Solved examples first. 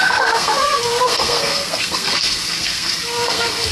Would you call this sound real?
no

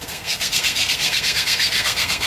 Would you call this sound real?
no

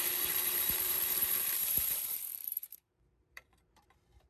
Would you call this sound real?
no